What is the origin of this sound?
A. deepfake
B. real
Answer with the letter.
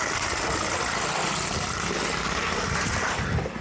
B